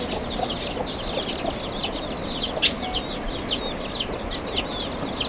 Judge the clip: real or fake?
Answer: real